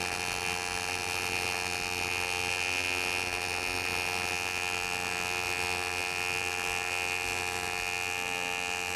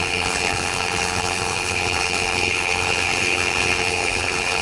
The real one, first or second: first